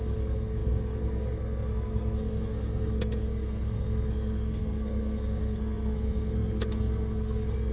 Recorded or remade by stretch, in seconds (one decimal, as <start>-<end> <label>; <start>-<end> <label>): 0.0-7.7 remade